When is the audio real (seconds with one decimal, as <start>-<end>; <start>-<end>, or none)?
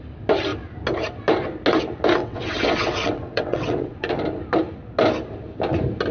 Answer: 0.0-2.2; 4.1-6.1